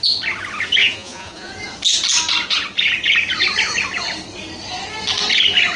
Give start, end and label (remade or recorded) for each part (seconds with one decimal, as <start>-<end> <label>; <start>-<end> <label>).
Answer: 0.0-0.8 recorded; 0.8-1.5 remade; 1.5-5.8 recorded